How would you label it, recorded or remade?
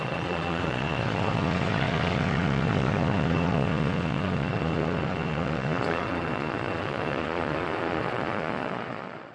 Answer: remade